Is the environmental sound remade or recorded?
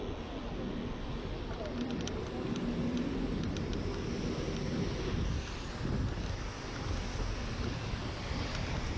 recorded